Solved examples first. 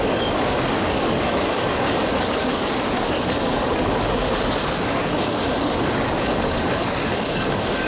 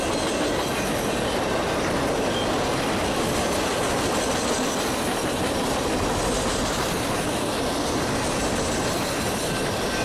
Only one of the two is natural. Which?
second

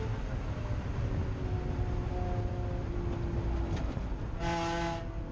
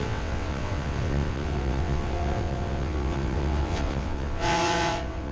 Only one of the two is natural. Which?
first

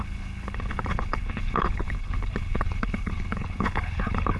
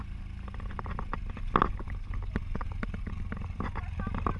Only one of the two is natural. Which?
second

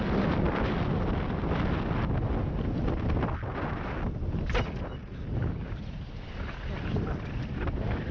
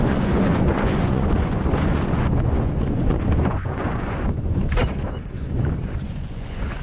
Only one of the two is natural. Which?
first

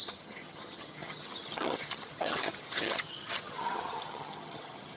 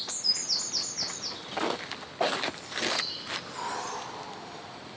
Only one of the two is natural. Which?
second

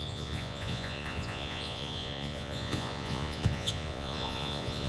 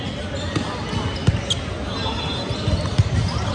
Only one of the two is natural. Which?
second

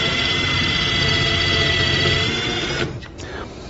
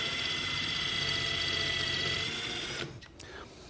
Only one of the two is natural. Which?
first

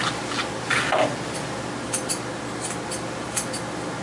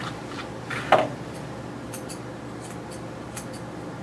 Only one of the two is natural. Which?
first